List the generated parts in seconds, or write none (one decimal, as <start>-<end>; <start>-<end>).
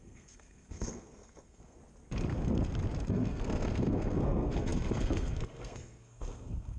0.0-1.8; 3.1-6.8